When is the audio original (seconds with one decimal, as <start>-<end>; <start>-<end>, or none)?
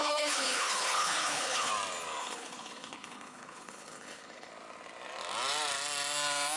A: 1.7-2.2; 4.5-6.6